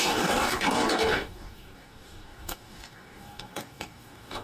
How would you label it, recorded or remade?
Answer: remade